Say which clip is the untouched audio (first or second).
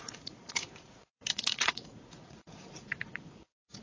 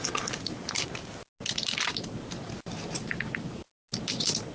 second